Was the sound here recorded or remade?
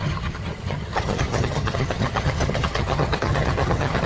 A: remade